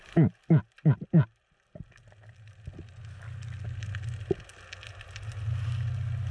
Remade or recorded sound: recorded